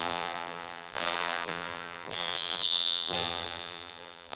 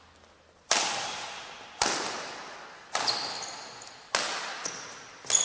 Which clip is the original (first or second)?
second